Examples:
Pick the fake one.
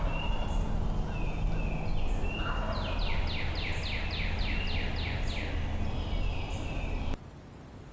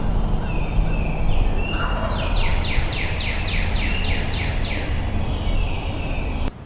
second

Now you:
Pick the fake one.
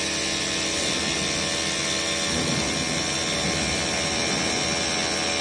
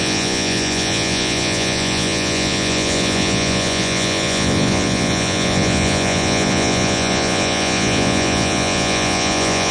second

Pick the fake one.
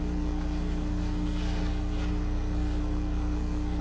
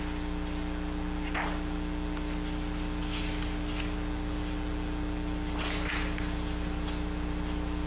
first